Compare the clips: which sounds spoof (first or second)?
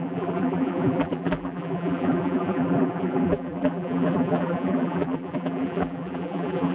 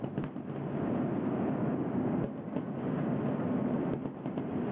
first